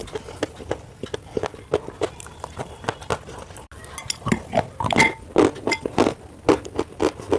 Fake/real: real